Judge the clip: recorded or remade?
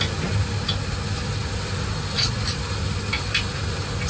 recorded